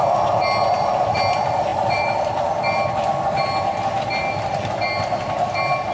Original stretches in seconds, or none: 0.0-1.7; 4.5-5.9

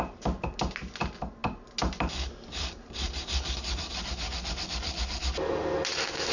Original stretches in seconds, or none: 0.0-6.3

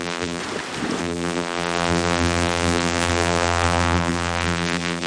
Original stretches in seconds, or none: 0.4-1.0

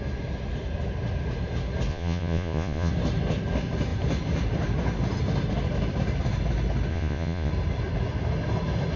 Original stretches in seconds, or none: 0.0-1.9; 2.9-6.9; 7.5-9.0